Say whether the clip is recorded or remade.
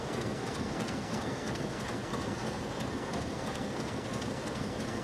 remade